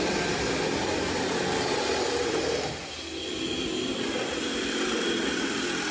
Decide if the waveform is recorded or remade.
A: recorded